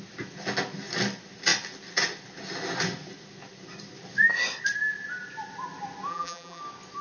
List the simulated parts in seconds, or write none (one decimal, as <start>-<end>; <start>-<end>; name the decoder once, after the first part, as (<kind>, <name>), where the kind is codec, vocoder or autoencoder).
6.1-6.6 (vocoder, BigVGAN v2)